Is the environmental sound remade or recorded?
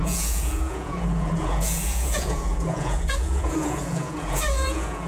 remade